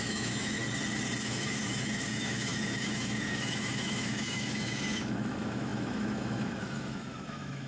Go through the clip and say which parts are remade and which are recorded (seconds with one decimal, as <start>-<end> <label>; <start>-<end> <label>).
0.0-0.6 remade; 0.6-1.2 recorded; 1.2-7.7 remade

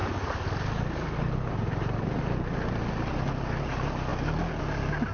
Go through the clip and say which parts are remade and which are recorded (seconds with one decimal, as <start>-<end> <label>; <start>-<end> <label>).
0.0-5.1 recorded

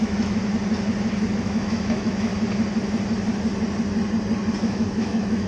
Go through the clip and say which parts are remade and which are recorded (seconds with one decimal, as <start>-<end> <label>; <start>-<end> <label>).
0.0-0.4 remade; 0.4-1.4 recorded; 1.4-2.3 remade; 2.3-4.6 recorded; 4.6-5.5 remade

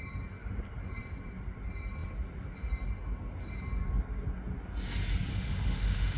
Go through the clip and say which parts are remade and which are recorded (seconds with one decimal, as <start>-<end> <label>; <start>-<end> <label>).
0.0-5.3 recorded; 5.3-6.2 remade

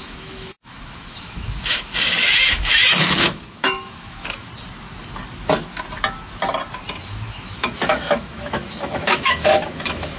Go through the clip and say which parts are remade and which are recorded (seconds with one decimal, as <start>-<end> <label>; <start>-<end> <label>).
0.0-4.5 remade; 4.5-7.0 recorded; 7.0-10.2 remade